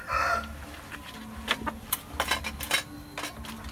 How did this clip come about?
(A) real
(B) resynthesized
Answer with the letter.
A